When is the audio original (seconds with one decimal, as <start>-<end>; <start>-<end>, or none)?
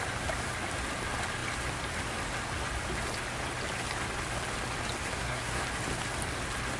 0.0-5.0; 5.6-6.8